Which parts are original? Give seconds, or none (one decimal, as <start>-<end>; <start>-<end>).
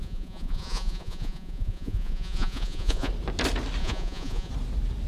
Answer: 3.1-3.8; 4.5-5.1